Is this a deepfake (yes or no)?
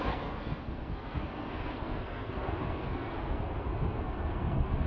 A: yes